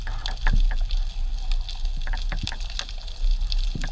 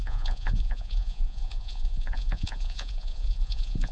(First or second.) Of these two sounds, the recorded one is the first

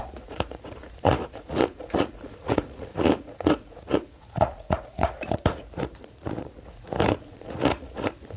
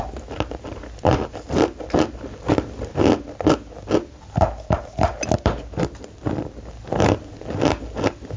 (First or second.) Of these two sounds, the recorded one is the second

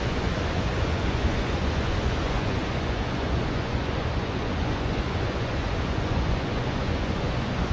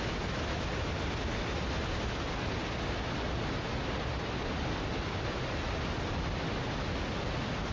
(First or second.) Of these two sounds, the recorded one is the second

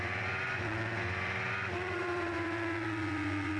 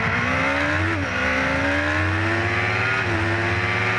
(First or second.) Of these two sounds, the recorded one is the second